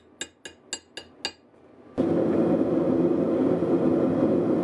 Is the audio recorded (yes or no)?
yes